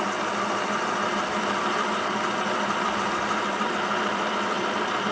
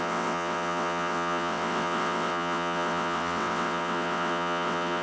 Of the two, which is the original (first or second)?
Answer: first